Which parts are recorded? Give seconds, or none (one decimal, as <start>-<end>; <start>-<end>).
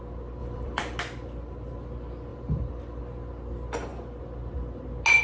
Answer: 0.0-0.4; 1.0-2.3; 3.0-5.2